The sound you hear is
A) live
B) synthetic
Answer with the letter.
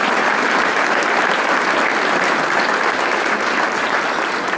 A